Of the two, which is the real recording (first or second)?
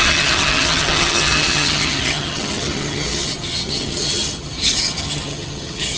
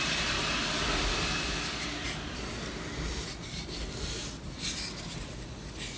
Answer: second